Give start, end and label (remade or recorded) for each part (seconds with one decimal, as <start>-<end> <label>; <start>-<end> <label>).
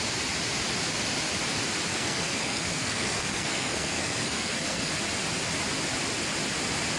0.0-1.9 recorded; 1.9-4.9 remade; 4.9-7.0 recorded